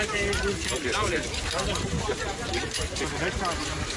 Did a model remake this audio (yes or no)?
no